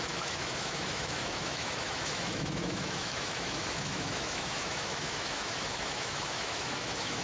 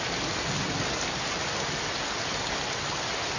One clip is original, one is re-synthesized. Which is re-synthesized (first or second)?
first